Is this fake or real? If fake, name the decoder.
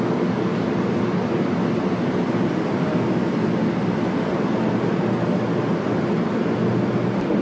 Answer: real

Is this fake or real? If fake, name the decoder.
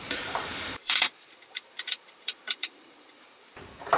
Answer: fake, vocoder, BigVGAN v2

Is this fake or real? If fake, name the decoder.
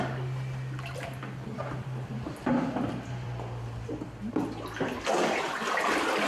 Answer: real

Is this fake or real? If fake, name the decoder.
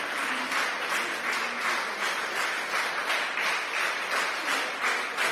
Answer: real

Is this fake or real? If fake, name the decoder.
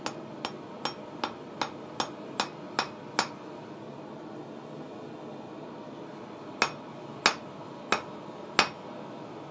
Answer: real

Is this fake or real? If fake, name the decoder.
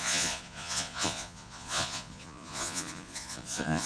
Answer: fake, vocoder, Vocos